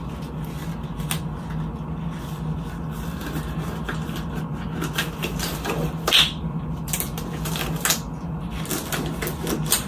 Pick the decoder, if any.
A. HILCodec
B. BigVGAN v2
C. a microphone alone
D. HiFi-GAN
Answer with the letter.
C